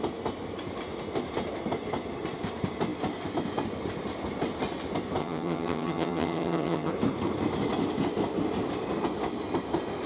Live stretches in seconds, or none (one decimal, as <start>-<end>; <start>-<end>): 0.0-5.2; 6.9-10.1